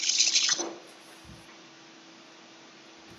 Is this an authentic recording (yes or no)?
yes